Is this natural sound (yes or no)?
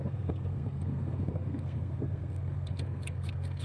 no